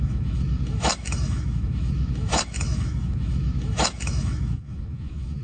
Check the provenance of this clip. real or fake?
fake